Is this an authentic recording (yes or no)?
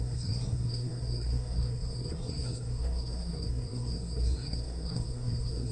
no